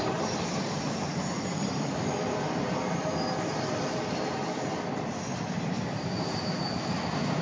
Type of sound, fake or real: fake